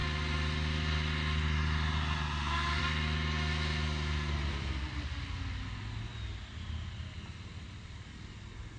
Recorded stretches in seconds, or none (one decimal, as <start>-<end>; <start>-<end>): 0.0-8.8